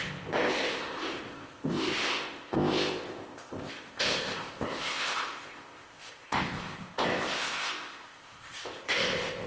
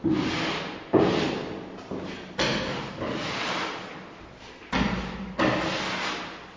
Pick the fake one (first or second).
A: first